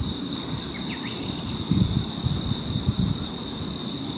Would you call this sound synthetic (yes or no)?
yes